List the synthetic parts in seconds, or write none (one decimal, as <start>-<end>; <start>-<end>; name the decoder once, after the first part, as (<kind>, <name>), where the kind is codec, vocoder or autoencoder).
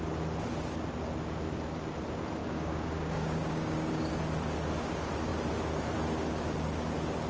2.4-4.2 (codec, DAC)